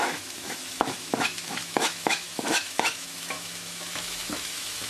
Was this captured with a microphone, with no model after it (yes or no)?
no